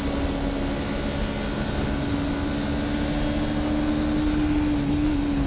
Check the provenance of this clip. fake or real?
real